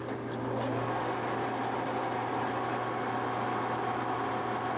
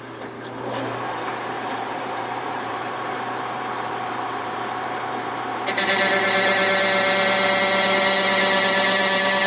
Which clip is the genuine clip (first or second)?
first